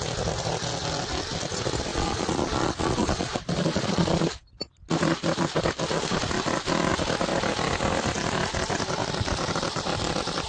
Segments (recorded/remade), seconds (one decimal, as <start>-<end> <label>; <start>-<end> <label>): 0.0-1.9 recorded; 1.9-4.2 remade; 4.2-10.5 recorded